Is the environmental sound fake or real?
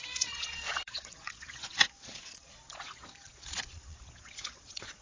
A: fake